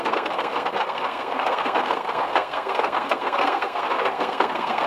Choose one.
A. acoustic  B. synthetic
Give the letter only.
B